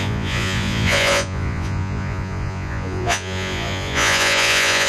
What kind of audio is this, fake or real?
fake